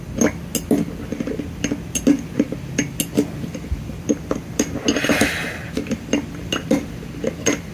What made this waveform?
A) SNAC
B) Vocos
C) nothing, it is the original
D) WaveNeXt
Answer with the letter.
C